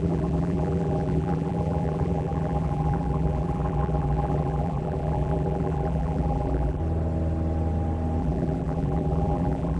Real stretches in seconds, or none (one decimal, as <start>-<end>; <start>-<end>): 6.8-8.2